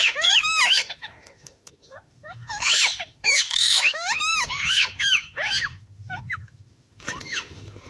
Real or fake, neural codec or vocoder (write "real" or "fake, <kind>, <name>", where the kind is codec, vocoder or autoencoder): fake, autoencoder, DAC-VAE